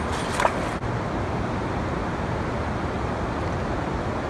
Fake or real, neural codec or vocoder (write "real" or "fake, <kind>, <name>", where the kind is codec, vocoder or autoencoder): real